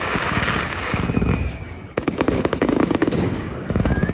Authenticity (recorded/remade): remade